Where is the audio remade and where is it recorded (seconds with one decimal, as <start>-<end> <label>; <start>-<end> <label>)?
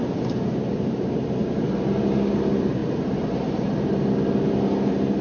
0.0-1.7 remade; 1.7-5.2 recorded